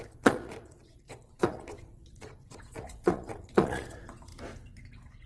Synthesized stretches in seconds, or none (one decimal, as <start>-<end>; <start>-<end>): 0.0-4.3